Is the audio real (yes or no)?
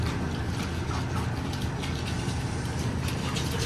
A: yes